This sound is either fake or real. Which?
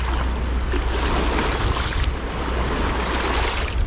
real